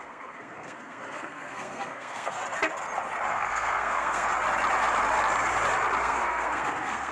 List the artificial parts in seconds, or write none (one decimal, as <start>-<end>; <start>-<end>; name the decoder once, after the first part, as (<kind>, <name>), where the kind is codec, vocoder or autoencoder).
0.0-2.4 (codec, SNAC); 3.3-4.3; 6.0-7.1